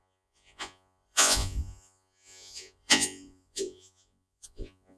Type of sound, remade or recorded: remade